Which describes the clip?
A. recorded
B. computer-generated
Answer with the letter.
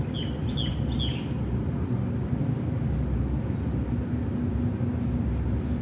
A